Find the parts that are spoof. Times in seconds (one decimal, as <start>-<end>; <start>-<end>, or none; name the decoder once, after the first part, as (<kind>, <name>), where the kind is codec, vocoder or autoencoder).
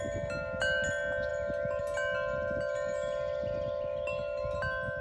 none